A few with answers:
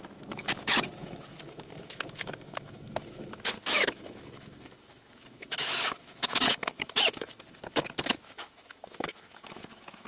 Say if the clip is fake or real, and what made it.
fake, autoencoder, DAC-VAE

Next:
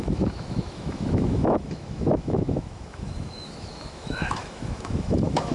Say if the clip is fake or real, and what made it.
fake, autoencoder, DAC-VAE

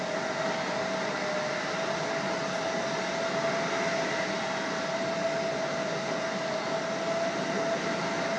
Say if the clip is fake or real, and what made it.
real